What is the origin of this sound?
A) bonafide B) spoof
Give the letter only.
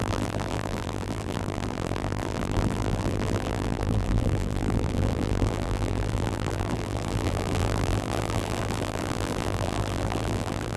B